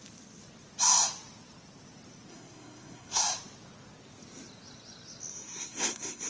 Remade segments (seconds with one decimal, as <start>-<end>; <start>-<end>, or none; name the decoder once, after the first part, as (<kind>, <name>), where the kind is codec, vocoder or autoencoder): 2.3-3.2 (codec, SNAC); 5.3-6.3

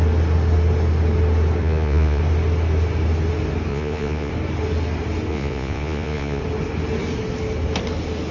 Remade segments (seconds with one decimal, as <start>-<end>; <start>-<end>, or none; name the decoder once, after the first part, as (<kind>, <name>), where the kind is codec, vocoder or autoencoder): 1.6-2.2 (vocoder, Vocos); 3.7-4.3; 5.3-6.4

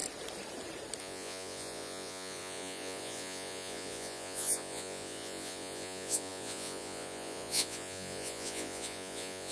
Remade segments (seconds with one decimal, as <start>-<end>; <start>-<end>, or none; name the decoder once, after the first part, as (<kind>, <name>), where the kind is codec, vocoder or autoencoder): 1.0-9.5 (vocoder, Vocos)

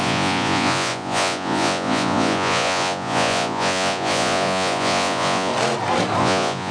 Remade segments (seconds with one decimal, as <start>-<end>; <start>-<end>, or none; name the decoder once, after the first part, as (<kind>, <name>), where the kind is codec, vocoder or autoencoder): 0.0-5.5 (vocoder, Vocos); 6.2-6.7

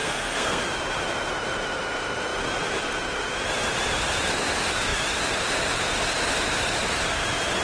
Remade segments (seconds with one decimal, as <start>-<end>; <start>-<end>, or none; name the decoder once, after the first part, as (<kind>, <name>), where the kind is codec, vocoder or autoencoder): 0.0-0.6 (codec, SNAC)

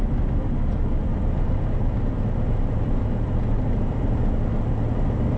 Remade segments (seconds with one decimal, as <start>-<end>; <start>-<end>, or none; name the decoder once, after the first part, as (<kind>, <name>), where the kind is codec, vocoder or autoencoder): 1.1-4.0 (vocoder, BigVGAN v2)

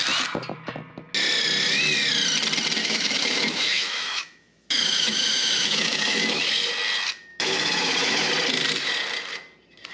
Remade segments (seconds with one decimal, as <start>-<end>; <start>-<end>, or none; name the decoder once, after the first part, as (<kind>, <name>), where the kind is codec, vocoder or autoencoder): 2.8-6.4 (autoencoder, DAC-VAE); 7.3-8.3